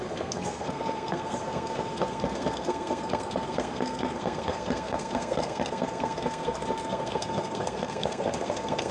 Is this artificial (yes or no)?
yes